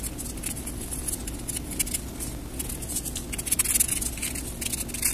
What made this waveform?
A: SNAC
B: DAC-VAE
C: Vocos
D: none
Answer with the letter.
D